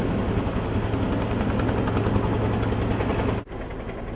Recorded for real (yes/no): yes